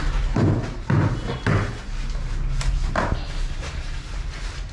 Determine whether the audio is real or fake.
real